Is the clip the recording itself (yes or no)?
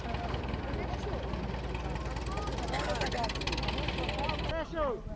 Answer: yes